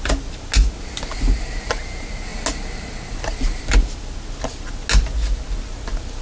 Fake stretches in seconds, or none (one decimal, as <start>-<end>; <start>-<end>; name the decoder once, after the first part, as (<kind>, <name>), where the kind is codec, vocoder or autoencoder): none